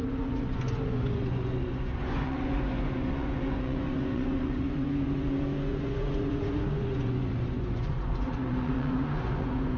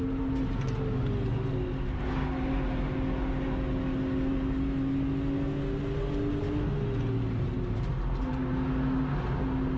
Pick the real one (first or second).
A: second